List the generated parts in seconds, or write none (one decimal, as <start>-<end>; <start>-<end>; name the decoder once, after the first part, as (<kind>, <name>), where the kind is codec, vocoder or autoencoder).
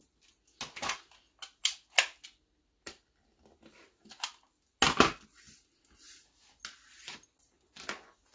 none